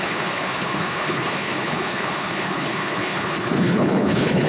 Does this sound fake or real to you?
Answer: fake